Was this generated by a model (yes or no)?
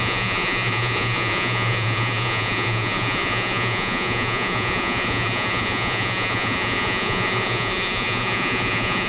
yes